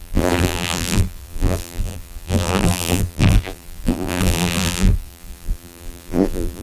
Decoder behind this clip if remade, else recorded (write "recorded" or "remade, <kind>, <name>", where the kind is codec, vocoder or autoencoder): remade, vocoder, BigVGAN v2